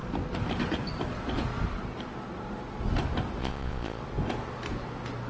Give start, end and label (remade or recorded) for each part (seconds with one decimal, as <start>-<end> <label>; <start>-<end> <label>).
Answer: 0.0-3.4 recorded; 3.4-4.0 remade; 4.0-5.3 recorded